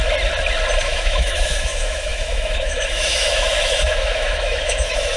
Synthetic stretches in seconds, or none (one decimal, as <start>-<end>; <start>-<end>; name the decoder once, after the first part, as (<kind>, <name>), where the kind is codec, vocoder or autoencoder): 0.8-5.2 (autoencoder, DAC-VAE)